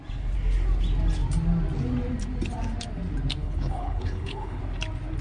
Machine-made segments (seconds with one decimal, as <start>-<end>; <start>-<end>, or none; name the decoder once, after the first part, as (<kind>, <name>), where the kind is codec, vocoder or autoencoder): 3.4-4.6 (codec, HILCodec)